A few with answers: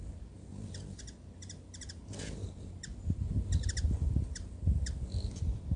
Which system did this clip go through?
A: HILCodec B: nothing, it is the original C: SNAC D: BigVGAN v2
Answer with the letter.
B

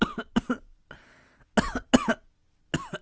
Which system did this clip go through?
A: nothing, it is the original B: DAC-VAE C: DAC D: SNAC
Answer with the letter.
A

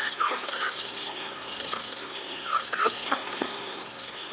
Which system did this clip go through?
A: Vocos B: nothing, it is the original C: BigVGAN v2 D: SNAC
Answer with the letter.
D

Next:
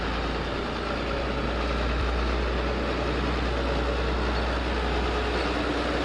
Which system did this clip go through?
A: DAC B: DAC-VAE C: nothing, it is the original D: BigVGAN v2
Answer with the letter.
C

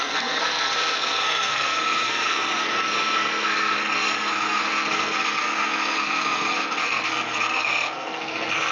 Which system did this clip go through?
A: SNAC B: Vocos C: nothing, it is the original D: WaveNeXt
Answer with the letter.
A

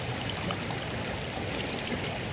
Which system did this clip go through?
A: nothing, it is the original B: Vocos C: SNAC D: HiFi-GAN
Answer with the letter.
A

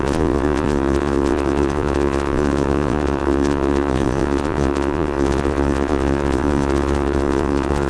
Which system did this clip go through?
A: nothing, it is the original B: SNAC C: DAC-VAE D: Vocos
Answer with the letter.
D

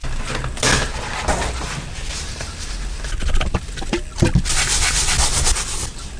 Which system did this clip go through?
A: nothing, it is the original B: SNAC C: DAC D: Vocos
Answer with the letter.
A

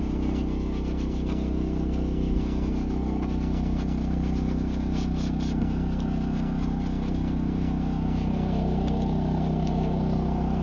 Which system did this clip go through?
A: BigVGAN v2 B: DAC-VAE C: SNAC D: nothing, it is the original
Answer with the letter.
C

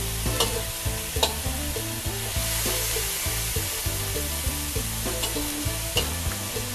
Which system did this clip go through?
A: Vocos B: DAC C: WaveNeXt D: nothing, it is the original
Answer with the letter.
D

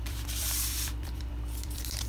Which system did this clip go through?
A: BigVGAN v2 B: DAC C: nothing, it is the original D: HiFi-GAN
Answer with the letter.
A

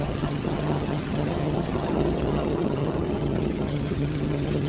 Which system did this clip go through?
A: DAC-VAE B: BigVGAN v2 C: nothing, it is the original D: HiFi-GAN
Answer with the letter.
D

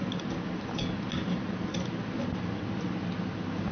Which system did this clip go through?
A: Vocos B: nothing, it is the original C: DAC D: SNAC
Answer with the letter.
B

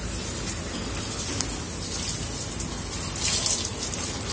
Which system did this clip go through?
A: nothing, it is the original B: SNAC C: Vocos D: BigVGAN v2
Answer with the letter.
A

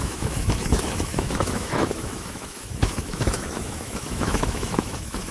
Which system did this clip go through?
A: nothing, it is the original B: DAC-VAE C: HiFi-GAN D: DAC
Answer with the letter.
B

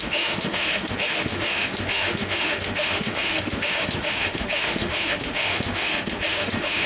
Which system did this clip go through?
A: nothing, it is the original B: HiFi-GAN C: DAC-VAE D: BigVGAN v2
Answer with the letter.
C